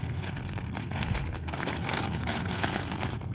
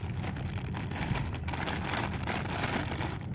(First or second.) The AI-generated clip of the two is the first